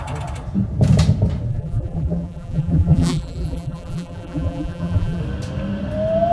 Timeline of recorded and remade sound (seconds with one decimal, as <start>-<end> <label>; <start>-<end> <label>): 0.0-1.5 recorded; 1.5-5.2 remade; 5.2-6.3 recorded